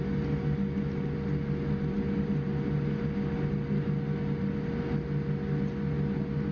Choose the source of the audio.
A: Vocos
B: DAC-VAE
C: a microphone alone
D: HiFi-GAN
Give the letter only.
C